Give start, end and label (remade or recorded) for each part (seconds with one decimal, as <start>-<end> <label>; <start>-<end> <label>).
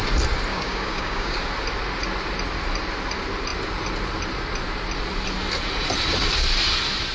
0.0-0.5 recorded; 0.5-1.4 remade; 1.4-7.1 recorded